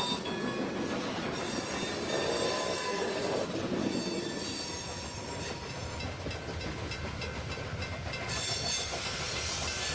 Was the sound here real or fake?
real